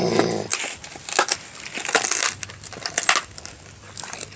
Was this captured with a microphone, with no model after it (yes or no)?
yes